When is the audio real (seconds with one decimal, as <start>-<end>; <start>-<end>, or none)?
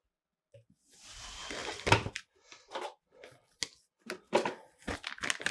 0.0-5.5